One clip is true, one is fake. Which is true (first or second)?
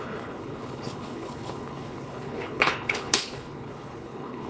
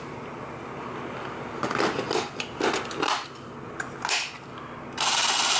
second